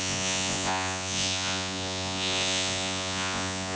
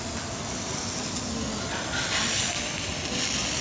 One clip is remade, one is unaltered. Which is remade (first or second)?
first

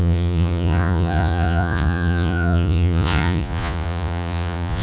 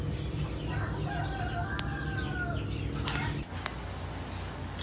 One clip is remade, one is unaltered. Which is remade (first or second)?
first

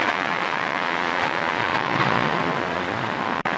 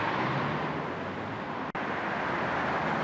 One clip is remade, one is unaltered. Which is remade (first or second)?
first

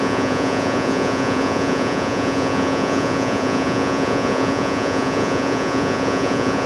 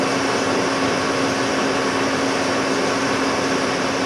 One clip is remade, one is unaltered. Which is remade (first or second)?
first